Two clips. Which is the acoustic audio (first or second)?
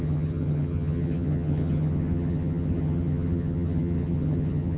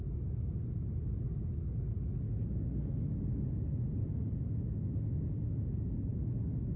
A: second